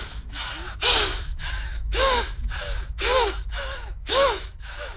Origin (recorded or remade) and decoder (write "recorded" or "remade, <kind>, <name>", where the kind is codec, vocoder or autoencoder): remade, autoencoder, DAC-VAE